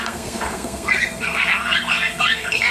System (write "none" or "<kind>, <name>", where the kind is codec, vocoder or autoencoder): codec, SNAC